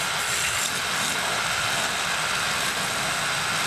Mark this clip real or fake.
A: real